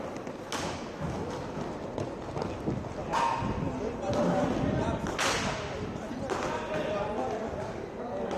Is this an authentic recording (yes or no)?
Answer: yes